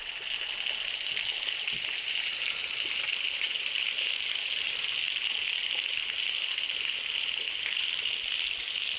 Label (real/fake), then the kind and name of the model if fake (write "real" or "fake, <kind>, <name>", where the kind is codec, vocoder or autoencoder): real